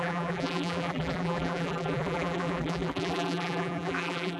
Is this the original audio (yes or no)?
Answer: no